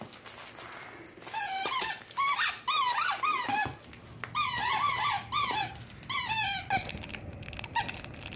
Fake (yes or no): no